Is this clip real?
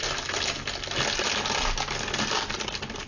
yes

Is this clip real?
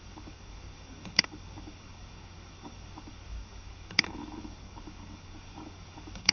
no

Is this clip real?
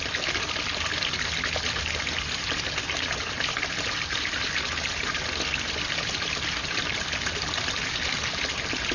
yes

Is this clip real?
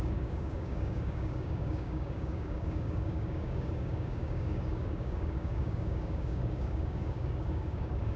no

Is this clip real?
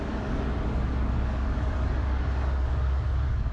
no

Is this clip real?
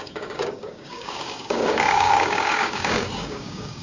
no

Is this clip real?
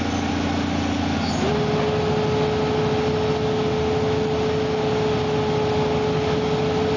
yes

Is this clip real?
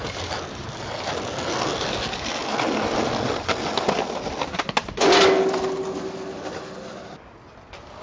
yes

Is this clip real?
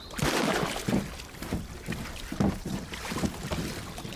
yes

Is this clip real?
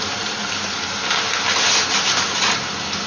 yes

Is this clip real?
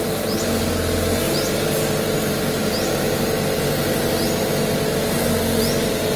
yes